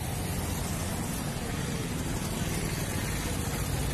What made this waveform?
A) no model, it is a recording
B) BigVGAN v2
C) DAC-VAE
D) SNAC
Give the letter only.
A